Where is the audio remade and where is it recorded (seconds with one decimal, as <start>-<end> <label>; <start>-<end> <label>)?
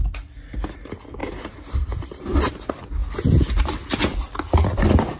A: 0.0-1.2 recorded; 1.2-2.5 remade; 2.5-5.2 recorded